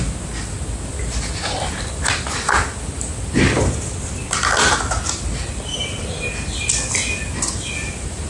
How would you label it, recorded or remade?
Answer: recorded